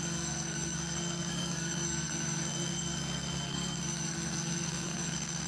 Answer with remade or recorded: remade